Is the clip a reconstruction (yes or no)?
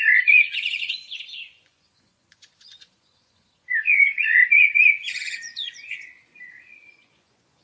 yes